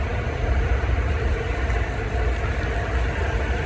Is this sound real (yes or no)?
yes